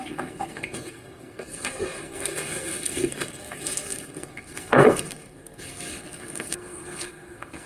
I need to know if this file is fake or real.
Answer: fake